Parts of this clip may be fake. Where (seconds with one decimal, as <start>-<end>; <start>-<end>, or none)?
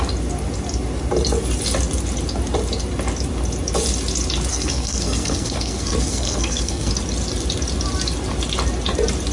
4.5-6.9